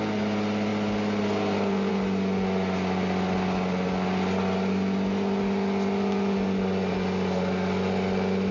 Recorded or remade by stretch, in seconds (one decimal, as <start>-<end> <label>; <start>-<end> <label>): 0.0-8.5 recorded